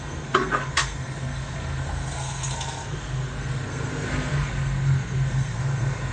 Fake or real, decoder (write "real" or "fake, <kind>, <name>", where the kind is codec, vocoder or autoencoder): fake, codec, SNAC